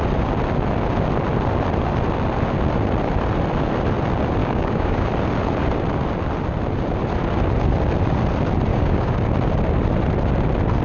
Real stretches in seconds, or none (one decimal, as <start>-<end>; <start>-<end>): 0.0-4.4; 5.1-8.7; 9.3-10.8